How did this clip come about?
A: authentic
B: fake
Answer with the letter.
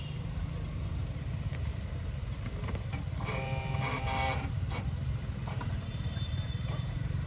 B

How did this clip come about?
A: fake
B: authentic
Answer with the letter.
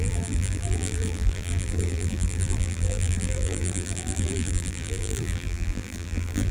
A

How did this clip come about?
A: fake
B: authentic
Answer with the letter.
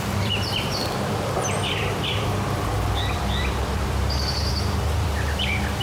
A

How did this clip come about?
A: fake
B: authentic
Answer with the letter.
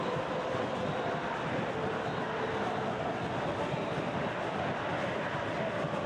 B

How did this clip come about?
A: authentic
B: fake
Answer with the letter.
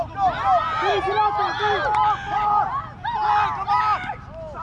A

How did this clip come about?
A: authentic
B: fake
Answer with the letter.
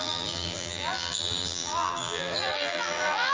B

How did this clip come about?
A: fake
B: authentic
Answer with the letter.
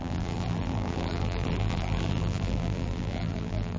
A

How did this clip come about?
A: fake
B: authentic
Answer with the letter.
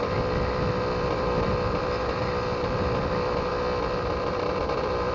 B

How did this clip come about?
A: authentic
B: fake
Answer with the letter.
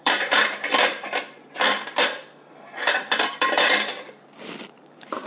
B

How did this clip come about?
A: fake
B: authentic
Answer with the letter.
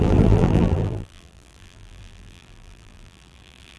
A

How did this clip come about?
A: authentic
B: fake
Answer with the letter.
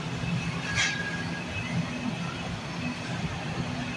A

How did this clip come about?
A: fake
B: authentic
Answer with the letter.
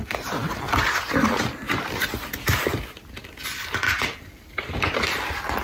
B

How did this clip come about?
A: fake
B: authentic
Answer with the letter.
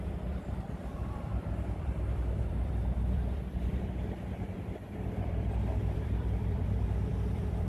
A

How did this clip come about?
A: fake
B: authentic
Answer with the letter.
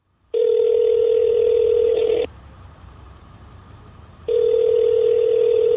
A